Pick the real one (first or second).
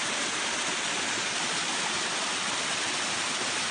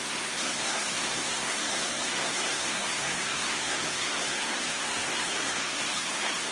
first